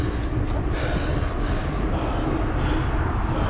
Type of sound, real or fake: real